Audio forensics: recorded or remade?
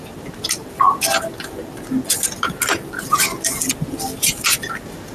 recorded